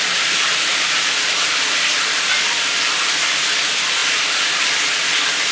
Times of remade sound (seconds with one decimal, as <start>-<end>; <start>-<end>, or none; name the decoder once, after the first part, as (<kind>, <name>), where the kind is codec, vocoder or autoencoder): 0.0-0.7 (vocoder, BigVGAN v2); 1.9-4.0; 4.6-5.5